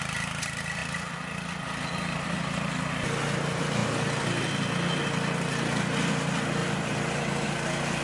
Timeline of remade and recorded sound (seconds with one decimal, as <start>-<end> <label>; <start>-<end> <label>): 0.0-6.6 recorded; 6.6-7.5 remade; 7.5-8.0 recorded